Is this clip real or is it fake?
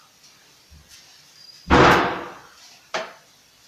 fake